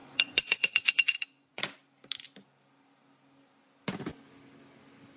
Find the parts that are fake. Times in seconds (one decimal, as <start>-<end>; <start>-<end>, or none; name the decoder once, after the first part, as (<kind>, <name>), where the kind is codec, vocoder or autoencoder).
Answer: 0.0-1.6 (vocoder, Vocos)